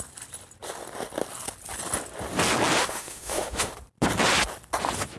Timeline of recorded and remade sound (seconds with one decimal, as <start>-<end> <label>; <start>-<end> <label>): 0.0-2.8 recorded; 2.8-3.7 remade; 3.7-5.2 recorded